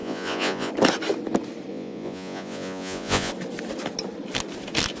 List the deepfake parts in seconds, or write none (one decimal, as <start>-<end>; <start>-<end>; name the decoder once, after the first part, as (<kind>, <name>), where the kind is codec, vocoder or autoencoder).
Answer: 0.0-0.7 (vocoder, Vocos); 1.7-3.3